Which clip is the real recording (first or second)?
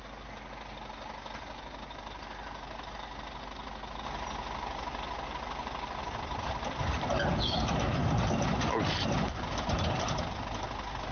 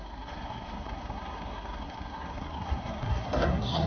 first